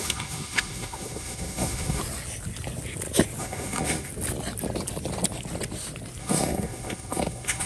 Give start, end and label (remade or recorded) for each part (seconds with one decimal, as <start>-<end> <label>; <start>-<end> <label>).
0.0-2.0 remade; 2.0-3.4 recorded; 3.4-4.1 remade; 4.1-6.2 recorded; 6.2-7.7 remade